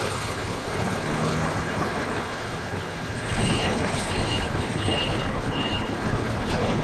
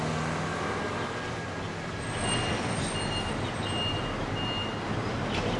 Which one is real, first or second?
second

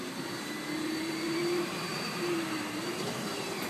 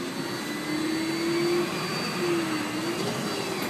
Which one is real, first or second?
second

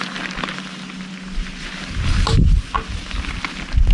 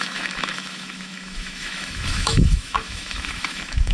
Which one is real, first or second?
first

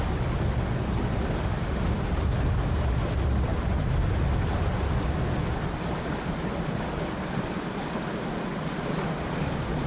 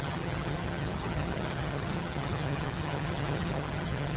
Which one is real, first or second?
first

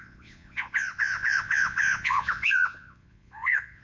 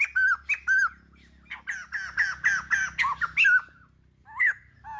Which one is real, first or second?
second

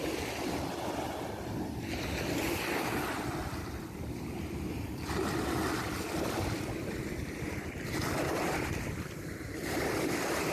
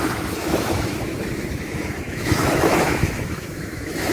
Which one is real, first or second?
first